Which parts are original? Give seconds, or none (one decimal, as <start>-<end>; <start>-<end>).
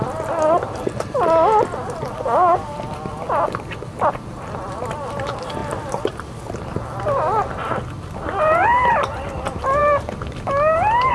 0.0-5.6; 7.0-11.1